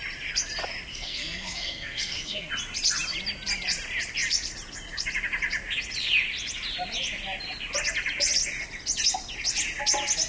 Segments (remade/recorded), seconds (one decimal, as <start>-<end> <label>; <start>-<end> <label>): 0.0-0.9 recorded; 0.9-2.5 remade; 2.5-10.3 recorded